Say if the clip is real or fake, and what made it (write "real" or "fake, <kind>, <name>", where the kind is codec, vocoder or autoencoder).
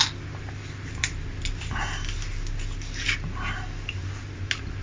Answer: real